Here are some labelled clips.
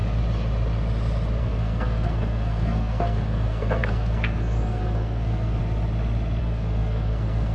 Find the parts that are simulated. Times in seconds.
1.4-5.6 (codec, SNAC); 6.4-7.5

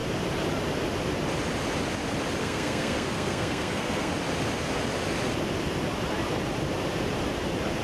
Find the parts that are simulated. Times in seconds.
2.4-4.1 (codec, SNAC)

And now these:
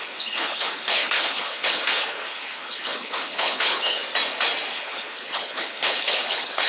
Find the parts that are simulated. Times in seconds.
0.0-4.0 (codec, HILCodec); 4.7-6.7

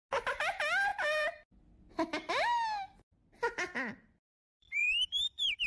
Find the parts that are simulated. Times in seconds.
0.9-1.5 (vocoder, BigVGAN v2); 4.8-5.7

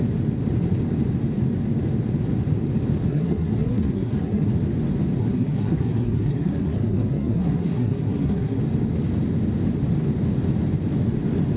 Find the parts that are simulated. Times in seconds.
3.1-4.5 (codec, SNAC); 5.2-8.6